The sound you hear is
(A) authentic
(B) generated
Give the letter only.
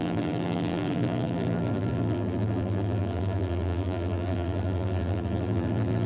B